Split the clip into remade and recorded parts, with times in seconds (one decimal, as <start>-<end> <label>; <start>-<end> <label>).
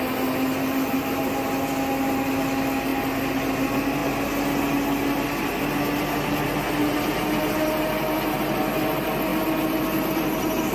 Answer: 0.0-10.7 recorded